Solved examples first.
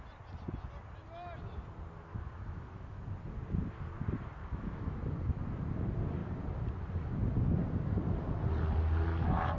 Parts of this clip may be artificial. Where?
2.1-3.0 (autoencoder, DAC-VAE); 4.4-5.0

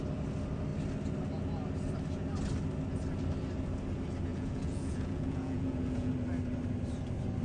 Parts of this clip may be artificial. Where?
4.3-6.1 (vocoder, Vocos)

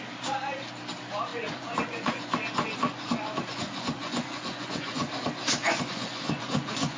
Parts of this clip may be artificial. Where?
1.3-5.1 (vocoder, Vocos); 5.6-7.0

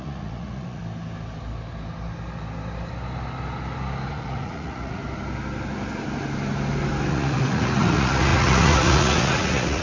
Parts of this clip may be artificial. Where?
0.0-0.8 (vocoder, Vocos); 4.1-5.0; 7.1-9.8

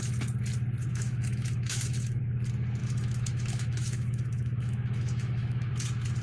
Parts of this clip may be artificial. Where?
0.9-2.2 (autoencoder, DAC-VAE); 2.8-5.7

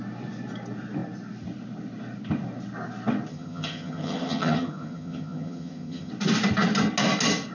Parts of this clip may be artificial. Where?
3.3-6.1 (vocoder, HiFi-GAN)

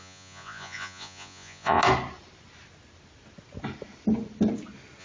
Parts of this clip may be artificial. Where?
0.0-1.8 (vocoder, Vocos)